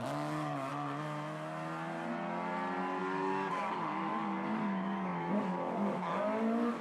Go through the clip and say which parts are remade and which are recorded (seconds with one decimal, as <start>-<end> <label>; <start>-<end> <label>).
0.0-0.7 remade; 0.7-3.0 recorded; 3.0-6.8 remade